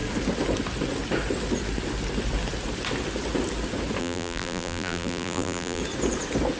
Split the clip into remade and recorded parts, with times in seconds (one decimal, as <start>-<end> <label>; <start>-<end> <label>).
0.0-4.0 recorded; 4.0-5.8 remade; 5.8-6.6 recorded